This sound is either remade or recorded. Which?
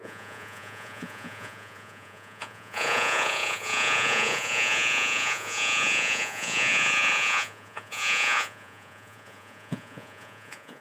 remade